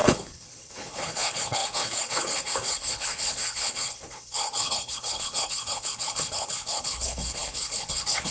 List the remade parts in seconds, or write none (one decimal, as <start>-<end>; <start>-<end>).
0.0-8.3